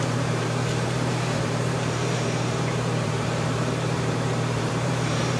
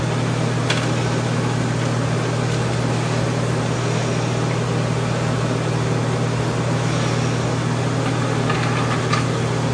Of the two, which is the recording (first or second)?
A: second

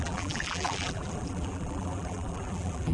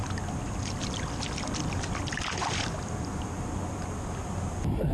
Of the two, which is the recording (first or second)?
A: second